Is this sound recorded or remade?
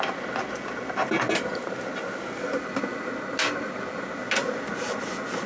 recorded